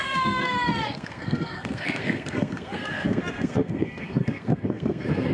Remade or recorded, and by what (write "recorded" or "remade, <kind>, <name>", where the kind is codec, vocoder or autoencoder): remade, codec, SNAC